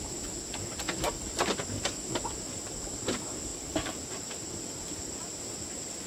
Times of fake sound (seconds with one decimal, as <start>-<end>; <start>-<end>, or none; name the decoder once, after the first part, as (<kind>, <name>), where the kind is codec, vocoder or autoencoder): none